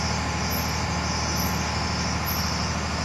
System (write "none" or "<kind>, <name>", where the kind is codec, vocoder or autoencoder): none